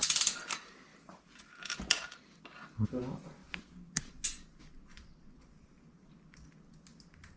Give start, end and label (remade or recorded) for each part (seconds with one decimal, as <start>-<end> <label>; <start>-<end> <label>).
0.0-0.9 recorded; 0.9-2.2 remade; 2.2-7.4 recorded